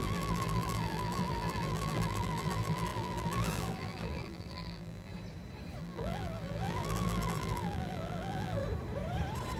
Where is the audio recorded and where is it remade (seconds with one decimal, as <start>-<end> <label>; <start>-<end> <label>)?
0.0-5.1 remade; 5.1-5.8 recorded; 5.8-8.6 remade; 8.6-9.6 recorded